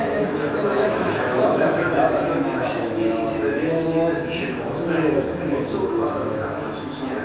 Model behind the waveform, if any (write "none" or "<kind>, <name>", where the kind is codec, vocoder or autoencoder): autoencoder, DAC-VAE